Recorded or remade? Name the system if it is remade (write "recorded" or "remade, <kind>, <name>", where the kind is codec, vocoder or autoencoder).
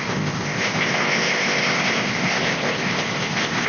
remade, codec, ZipCodec